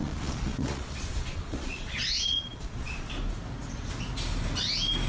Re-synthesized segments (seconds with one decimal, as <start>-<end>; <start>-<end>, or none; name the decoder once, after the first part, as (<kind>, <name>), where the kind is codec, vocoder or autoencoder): 0.0-3.1 (vocoder, Vocos)